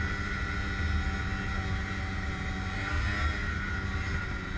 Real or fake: real